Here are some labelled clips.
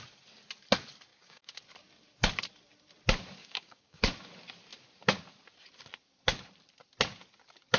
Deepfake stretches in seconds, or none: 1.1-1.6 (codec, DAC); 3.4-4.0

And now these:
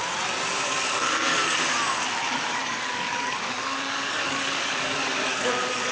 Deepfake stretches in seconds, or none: 0.5-1.3 (codec, DAC); 2.2-5.9

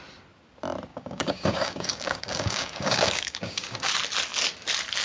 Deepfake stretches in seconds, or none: 0.9-3.9 (codec, DAC)

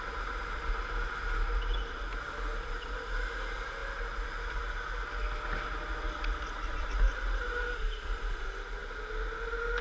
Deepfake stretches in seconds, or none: none

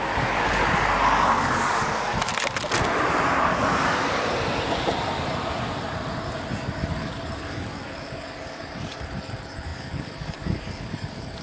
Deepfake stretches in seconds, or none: 0.0-0.6 (codec, DAC); 1.2-2.3; 6.9-11.4

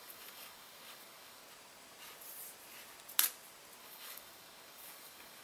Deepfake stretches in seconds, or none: 0.0-1.4 (codec, DAC); 3.8-5.4

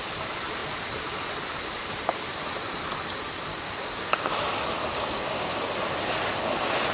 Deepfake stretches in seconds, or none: 3.5-4.3 (codec, DAC); 4.9-5.7